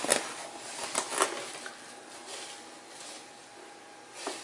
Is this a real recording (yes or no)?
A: yes